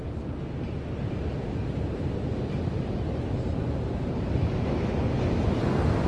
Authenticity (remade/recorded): recorded